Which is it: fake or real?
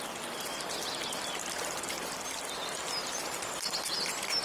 real